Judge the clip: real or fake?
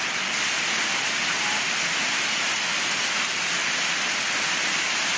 real